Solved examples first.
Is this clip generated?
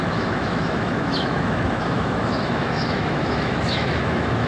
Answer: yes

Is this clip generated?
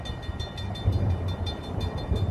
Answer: no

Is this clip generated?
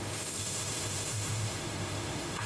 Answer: yes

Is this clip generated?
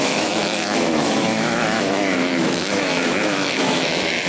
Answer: yes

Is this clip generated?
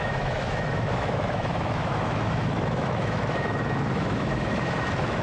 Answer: yes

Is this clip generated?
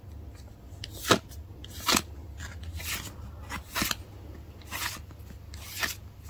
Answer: no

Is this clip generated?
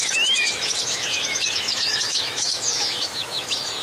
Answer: yes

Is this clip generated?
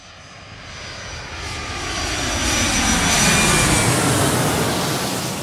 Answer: no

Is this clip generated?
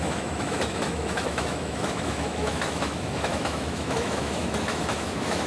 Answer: yes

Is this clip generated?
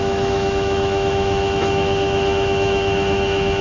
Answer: yes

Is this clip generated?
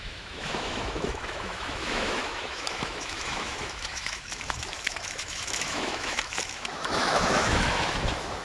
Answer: yes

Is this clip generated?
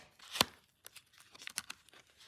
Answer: no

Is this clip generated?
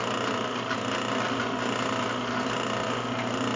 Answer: no